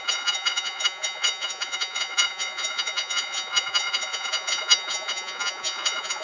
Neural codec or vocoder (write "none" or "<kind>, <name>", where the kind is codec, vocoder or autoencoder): vocoder, Vocos